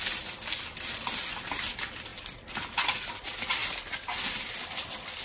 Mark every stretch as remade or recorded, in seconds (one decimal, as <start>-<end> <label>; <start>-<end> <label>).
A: 0.0-5.2 recorded